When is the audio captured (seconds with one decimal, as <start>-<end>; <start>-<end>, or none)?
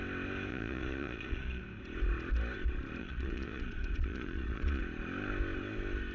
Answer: 0.0-0.5; 1.6-3.0; 4.8-6.1